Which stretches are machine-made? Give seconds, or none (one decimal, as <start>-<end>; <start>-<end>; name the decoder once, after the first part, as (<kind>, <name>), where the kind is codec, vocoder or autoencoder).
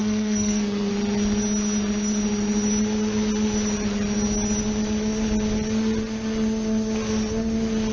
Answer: 0.0-0.9 (codec, SNAC)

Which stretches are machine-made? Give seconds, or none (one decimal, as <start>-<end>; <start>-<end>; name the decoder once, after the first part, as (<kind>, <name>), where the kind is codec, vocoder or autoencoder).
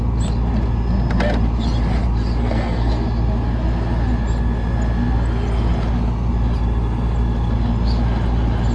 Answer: 2.4-2.9 (codec, SNAC)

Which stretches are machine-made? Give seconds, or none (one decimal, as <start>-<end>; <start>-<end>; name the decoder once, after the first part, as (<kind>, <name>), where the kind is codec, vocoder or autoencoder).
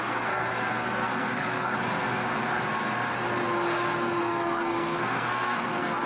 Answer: 0.0-1.7 (codec, SNAC); 4.2-6.1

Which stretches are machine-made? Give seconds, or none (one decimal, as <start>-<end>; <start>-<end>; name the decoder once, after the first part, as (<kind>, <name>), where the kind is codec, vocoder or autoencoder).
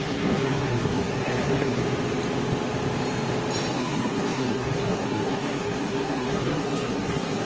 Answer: 0.0-1.8 (codec, SNAC); 3.7-7.5